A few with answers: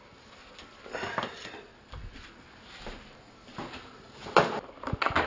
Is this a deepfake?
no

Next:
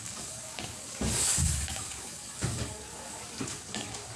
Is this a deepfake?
yes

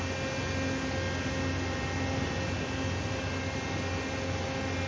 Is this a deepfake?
no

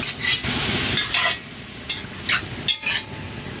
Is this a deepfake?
no